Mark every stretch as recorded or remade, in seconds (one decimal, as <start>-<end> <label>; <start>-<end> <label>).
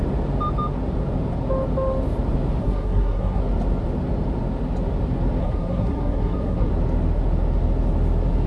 0.0-2.6 recorded; 2.6-3.4 remade; 3.4-5.4 recorded; 5.4-6.7 remade; 6.7-8.5 recorded